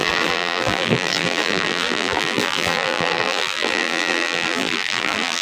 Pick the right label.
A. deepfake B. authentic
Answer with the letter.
A